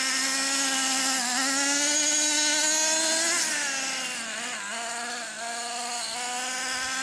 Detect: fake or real real